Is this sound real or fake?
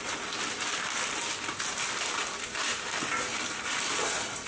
real